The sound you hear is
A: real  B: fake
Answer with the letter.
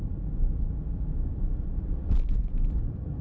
A